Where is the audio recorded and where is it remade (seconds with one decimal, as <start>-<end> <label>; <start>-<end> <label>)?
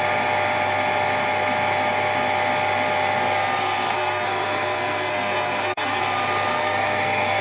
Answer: 0.0-3.9 recorded; 3.9-6.0 remade; 6.0-6.5 recorded; 6.5-7.4 remade